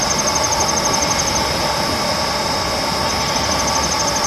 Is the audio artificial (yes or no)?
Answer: no